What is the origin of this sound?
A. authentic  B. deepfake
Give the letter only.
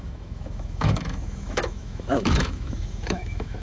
B